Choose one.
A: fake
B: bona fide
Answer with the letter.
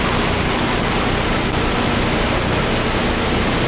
B